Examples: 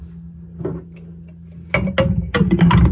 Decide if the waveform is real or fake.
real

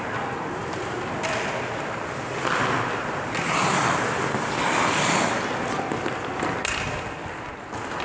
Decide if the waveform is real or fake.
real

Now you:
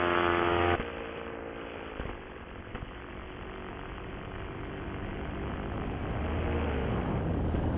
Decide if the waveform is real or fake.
real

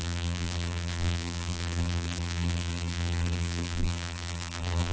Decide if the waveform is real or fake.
fake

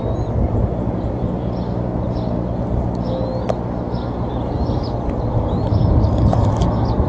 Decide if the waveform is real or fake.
real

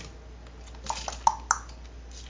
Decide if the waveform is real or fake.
real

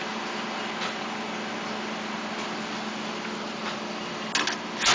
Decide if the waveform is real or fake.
real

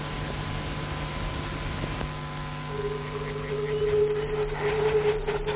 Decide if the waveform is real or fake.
real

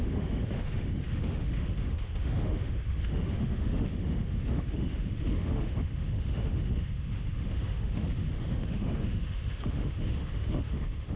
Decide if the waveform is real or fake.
fake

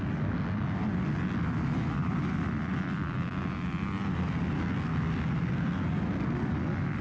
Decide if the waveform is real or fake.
real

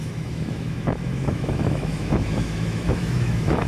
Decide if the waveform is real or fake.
fake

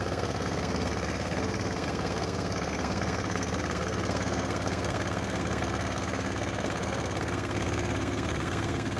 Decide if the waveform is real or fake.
fake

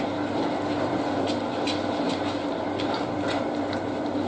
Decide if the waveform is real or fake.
real